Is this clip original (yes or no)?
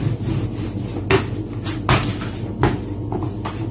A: yes